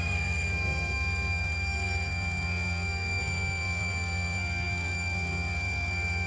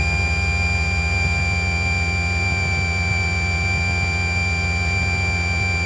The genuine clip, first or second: second